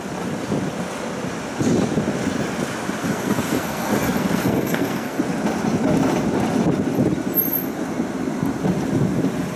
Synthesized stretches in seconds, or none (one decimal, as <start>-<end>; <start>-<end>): 3.0-5.2